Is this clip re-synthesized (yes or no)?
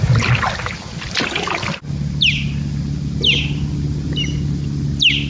no